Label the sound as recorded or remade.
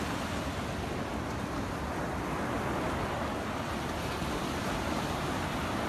recorded